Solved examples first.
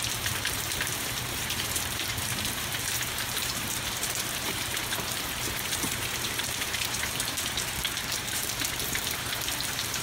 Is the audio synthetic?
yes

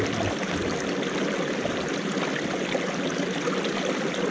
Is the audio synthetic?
no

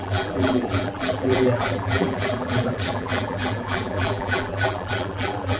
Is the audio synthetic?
yes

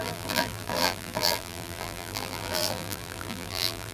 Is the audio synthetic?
yes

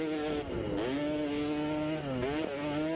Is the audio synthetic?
no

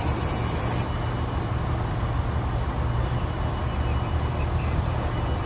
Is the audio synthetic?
no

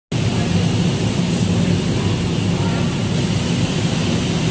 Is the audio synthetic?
no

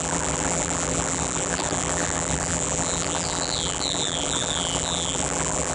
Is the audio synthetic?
yes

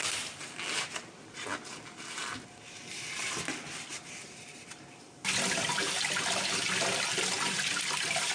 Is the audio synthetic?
no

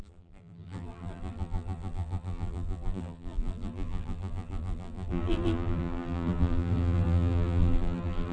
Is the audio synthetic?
yes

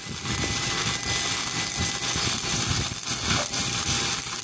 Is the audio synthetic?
yes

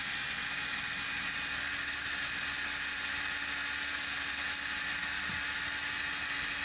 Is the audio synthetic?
no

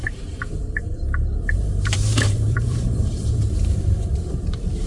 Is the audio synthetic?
yes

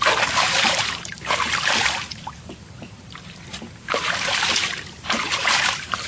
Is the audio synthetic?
yes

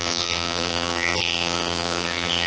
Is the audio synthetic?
yes